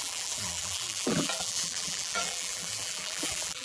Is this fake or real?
fake